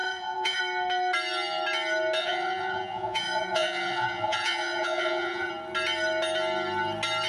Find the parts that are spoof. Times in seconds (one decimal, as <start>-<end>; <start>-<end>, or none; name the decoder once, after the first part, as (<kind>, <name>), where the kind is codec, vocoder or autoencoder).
0.0-0.6 (vocoder, Vocos); 2.2-5.5